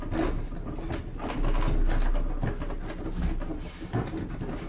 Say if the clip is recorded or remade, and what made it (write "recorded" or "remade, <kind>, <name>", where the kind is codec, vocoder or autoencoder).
recorded